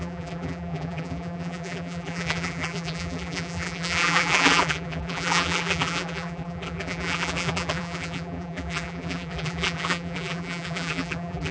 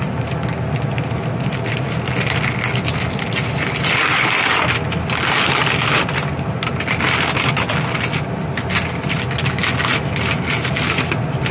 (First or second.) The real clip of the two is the second